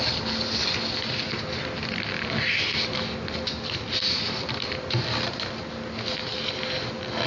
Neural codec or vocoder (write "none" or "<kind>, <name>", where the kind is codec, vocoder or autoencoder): none